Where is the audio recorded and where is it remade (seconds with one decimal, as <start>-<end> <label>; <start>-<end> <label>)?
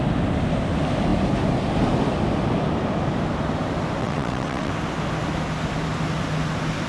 0.0-4.0 recorded; 4.0-4.7 remade; 4.7-6.9 recorded